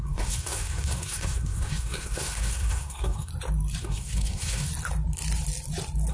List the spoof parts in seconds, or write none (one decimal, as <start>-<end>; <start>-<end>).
0.0-3.3; 3.8-4.7